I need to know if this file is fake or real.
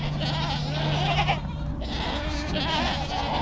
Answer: real